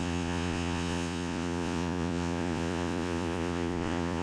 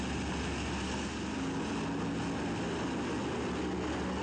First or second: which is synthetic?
first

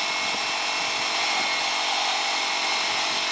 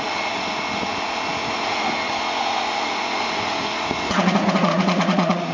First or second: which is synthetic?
second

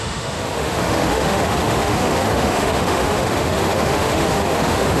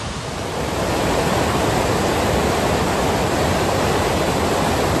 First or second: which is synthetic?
first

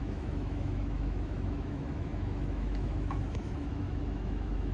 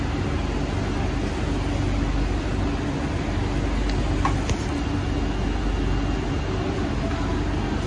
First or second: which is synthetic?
first